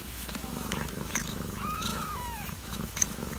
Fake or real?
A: fake